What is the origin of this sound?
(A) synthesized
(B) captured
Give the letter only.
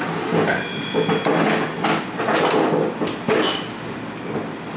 B